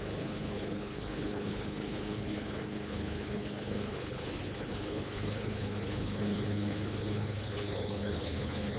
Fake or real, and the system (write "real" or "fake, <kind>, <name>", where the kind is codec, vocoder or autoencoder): fake, codec, HILCodec